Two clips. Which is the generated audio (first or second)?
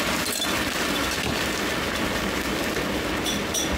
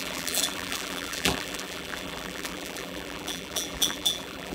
second